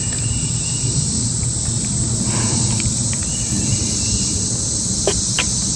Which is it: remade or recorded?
recorded